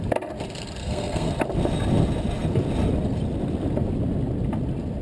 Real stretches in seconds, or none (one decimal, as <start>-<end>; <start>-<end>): 0.0-0.8; 1.3-5.0